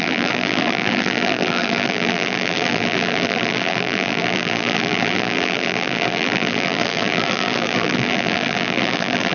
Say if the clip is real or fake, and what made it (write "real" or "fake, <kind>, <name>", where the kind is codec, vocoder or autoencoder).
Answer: fake, vocoder, BigVGAN v2